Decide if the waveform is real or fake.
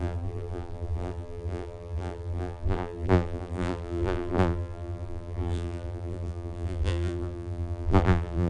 fake